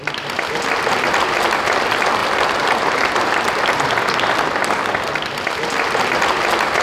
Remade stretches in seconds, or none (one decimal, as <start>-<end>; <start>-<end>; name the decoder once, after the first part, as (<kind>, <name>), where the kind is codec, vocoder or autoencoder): none